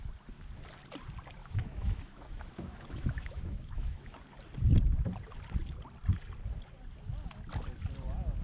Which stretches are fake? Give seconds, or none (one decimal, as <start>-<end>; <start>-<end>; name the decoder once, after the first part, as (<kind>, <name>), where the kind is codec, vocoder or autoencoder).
1.4-4.2 (autoencoder, DAC-VAE)